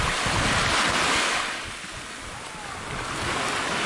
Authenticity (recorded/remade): recorded